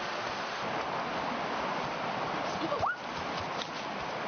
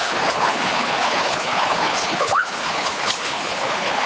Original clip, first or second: first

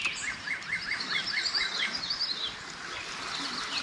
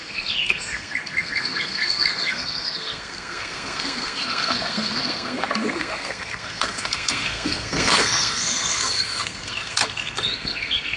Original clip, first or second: first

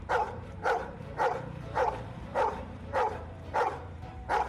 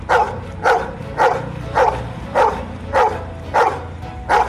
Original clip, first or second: second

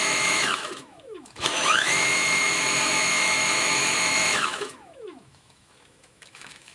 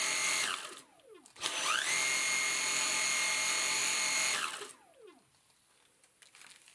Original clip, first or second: second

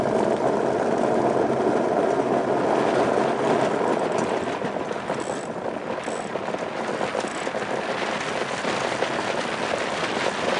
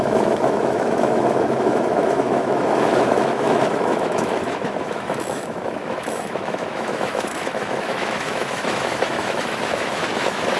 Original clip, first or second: first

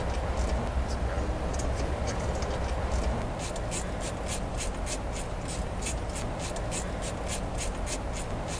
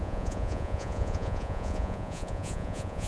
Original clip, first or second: first